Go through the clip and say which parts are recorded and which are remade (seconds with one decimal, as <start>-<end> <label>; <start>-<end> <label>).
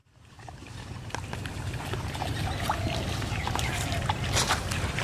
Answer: 0.0-5.0 recorded